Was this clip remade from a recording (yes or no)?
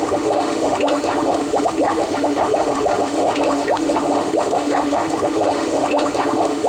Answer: yes